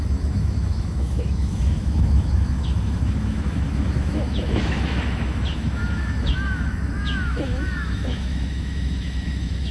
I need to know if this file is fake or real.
fake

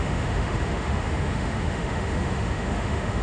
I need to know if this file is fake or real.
fake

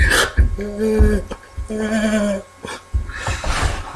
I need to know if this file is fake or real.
real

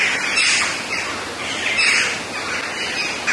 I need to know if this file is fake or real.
real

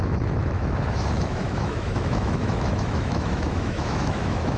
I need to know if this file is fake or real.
fake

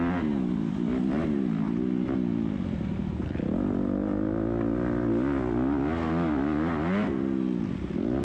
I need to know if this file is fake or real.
real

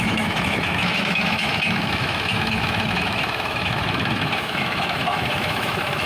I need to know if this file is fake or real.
fake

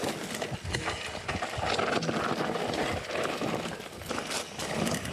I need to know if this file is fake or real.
real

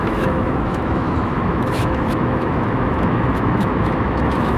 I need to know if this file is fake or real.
fake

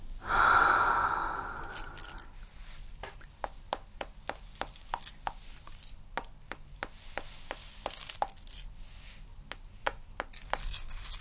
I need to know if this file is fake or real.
real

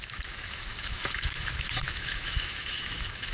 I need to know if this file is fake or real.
fake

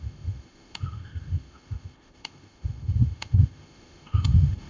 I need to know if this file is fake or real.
fake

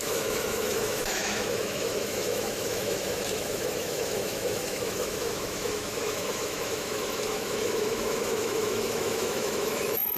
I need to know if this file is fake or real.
fake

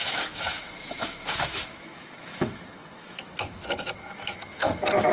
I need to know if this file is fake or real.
fake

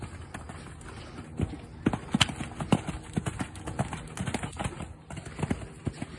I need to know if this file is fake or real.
real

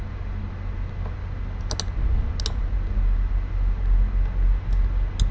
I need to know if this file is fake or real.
real